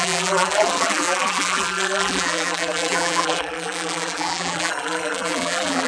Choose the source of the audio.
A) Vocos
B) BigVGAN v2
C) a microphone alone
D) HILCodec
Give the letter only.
B